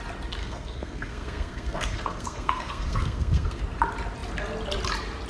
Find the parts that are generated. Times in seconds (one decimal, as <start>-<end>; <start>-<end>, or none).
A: 0.4-3.6